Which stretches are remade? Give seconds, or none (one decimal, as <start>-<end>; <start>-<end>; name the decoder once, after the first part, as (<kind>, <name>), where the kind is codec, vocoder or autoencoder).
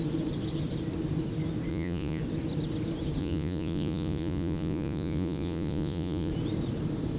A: 1.7-2.2 (vocoder, Vocos); 3.2-6.3